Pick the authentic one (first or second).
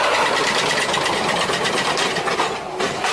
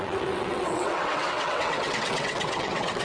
first